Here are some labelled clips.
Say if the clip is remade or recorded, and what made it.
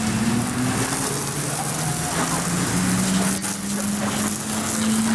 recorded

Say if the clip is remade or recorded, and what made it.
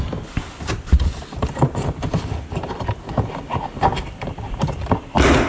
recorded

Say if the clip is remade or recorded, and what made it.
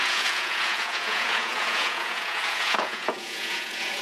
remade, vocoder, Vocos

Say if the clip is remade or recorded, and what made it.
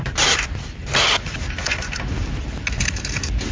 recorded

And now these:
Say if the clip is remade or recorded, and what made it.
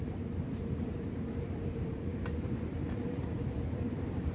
remade, vocoder, BigVGAN v2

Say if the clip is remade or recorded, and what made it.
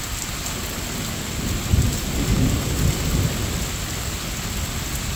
recorded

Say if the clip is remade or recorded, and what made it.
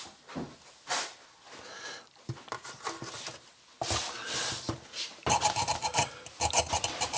recorded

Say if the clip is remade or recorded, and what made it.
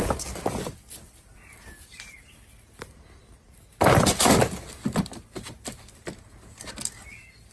recorded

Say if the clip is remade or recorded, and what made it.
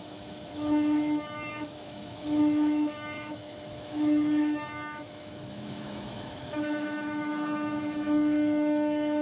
remade, autoencoder, DAC-VAE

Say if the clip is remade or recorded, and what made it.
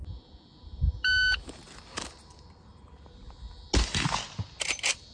recorded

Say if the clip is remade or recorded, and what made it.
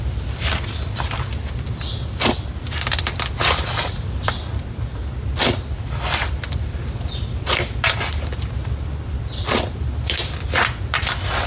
recorded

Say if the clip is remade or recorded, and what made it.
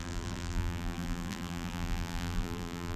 remade, vocoder, BigVGAN v2